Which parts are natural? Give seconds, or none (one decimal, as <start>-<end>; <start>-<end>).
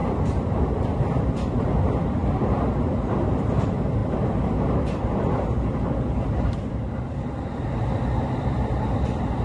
none